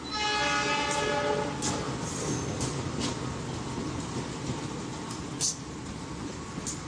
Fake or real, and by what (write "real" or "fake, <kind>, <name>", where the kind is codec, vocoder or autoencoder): real